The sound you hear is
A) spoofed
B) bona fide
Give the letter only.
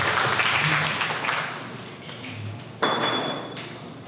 B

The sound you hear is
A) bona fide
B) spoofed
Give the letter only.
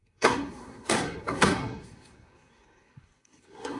B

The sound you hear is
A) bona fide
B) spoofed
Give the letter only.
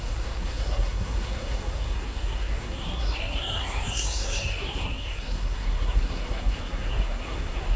B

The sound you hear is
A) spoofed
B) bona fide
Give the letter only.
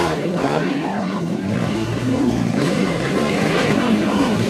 A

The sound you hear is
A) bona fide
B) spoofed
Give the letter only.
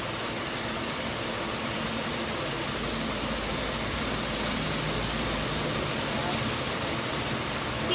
A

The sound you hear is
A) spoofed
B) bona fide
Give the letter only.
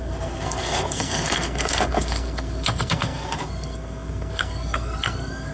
A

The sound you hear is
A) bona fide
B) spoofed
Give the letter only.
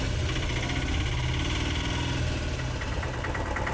A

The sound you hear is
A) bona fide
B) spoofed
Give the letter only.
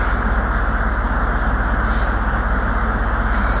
A